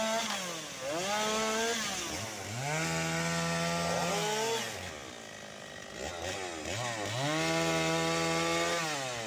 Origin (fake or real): real